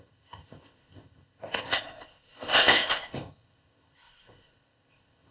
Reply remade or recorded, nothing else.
remade